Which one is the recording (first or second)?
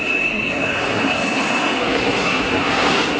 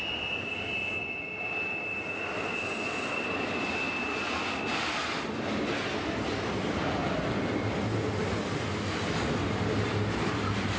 second